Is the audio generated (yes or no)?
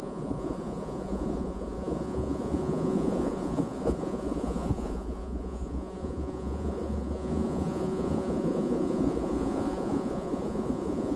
yes